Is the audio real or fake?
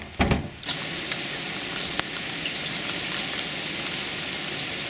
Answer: real